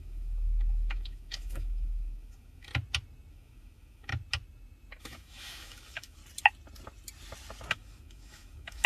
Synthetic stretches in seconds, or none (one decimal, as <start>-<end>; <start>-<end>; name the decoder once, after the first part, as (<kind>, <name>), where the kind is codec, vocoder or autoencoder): 0.0-2.7 (autoencoder, DAC-VAE); 3.3-4.1; 5.0-6.2; 7.7-8.9